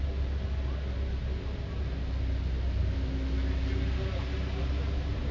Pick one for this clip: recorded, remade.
recorded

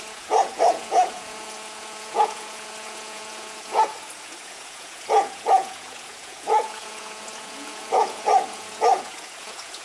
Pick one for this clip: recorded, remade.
remade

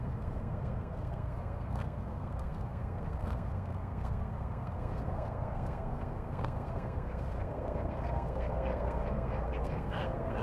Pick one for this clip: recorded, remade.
remade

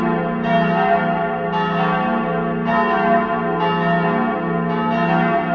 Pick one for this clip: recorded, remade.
recorded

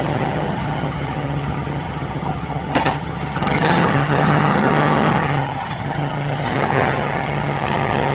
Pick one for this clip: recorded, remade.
remade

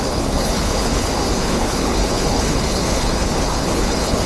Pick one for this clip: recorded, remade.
remade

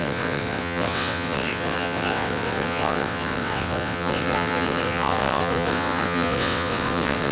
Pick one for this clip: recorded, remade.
remade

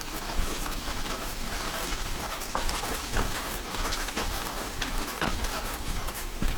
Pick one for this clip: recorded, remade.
remade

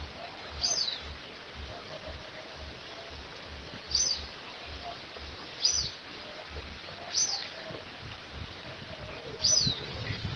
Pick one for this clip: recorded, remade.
recorded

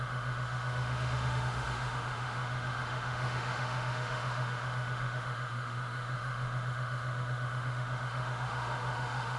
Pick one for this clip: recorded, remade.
remade